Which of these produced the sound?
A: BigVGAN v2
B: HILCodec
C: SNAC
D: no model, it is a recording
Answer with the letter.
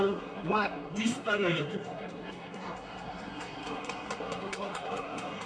C